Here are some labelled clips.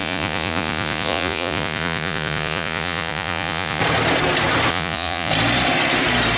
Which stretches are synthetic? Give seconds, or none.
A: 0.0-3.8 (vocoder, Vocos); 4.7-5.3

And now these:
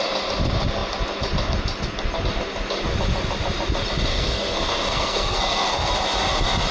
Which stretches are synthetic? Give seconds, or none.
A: 4.1-5.9 (codec, SNAC)

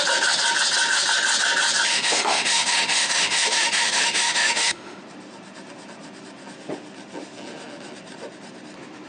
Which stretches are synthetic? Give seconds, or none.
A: 1.9-5.0 (autoencoder, DAC-VAE)

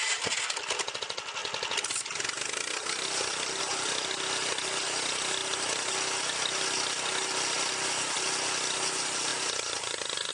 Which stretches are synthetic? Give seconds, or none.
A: none

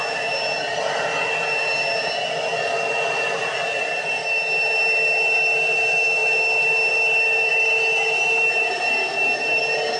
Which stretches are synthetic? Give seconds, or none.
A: 7.5-8.9 (vocoder, BigVGAN v2)

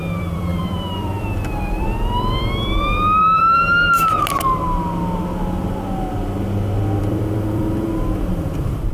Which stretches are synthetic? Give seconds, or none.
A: 0.0-3.6 (vocoder, BigVGAN v2); 7.0-8.9

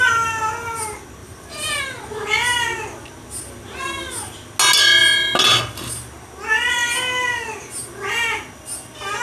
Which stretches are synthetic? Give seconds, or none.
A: 1.2-1.8 (vocoder, BigVGAN v2)

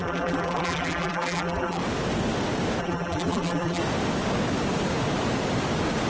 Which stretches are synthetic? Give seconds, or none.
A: 0.0-1.8 (vocoder, BigVGAN v2); 2.8-3.8